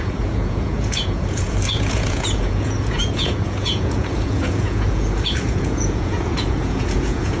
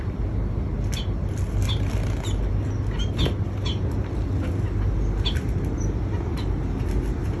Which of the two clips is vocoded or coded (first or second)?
first